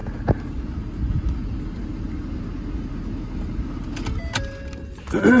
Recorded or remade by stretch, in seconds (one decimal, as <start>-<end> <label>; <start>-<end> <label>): 0.0-5.4 recorded